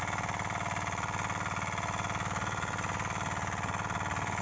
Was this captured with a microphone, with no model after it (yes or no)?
yes